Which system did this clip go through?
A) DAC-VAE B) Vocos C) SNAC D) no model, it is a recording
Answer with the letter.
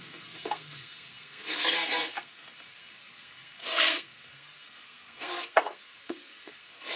C